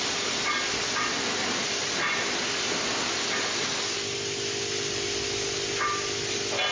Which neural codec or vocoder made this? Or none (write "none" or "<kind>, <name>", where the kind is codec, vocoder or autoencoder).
none